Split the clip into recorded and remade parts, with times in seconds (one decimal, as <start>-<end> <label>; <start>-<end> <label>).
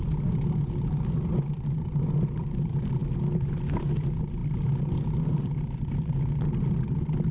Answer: 0.0-7.3 recorded